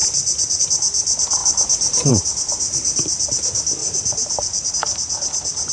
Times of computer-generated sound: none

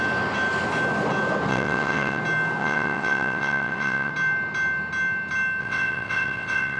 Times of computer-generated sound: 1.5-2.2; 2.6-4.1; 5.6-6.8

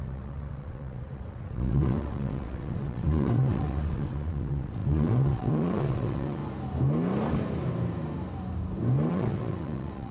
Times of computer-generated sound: 0.0-6.4; 9.1-10.1

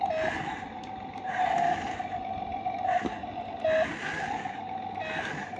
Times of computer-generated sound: none

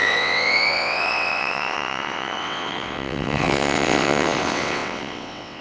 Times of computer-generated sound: 0.0-5.6

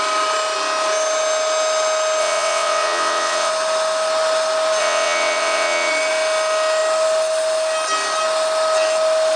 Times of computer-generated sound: 2.2-3.5; 4.8-5.9

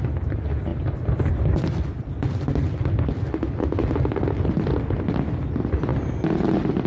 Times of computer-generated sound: none

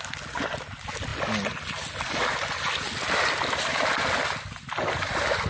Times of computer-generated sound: none